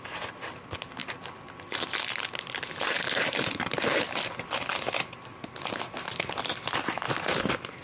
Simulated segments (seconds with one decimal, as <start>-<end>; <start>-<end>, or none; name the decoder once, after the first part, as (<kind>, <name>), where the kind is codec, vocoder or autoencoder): none